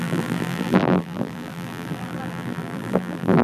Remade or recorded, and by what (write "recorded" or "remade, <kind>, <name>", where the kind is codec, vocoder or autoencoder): remade, vocoder, BigVGAN v2